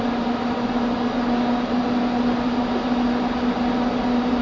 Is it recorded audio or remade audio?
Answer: recorded